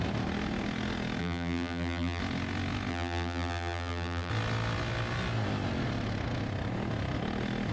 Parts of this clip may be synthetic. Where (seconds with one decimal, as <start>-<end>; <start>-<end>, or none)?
1.2-2.2; 2.9-4.3